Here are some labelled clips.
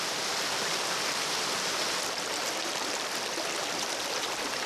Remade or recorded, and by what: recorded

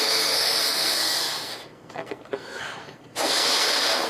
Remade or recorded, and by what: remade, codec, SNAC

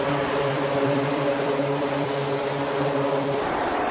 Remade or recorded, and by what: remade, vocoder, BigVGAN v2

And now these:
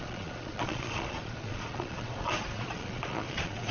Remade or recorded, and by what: remade, vocoder, Vocos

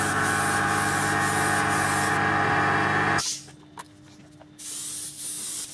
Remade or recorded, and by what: recorded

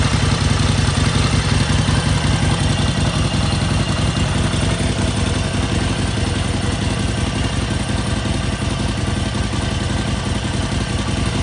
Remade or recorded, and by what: recorded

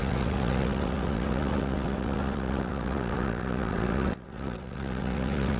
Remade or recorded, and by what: remade, vocoder, WaveNeXt